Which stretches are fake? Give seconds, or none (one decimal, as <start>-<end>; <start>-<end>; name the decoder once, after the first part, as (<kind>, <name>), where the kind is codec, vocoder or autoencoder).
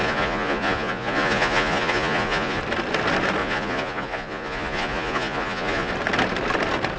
0.0-2.6 (vocoder, Vocos); 3.4-5.9